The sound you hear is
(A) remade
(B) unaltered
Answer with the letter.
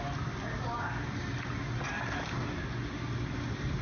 B